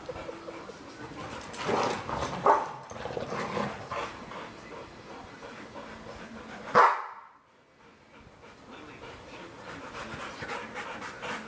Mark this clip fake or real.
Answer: real